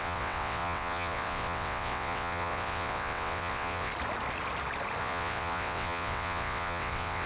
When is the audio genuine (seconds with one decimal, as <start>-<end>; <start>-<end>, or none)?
3.9-5.0